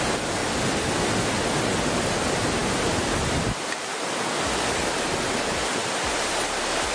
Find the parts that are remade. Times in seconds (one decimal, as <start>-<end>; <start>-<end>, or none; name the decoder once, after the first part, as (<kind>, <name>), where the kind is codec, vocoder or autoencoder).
none